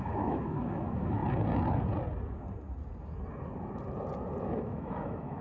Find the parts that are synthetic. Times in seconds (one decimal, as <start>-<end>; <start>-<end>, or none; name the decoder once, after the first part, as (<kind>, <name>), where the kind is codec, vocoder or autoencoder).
0.0-1.2 (autoencoder, DAC-VAE); 4.4-5.4